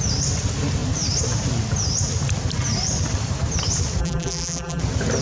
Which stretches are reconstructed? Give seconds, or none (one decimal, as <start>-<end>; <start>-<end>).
4.0-4.8